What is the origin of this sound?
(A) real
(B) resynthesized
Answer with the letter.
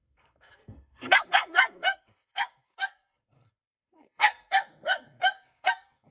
B